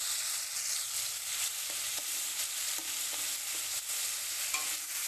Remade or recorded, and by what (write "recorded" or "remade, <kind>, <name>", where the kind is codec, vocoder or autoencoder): recorded